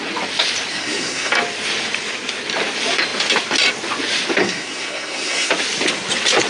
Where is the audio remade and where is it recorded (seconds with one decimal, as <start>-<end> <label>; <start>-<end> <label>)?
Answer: 0.0-0.7 recorded; 0.7-1.3 remade; 1.3-4.4 recorded; 4.4-5.5 remade; 5.5-6.5 recorded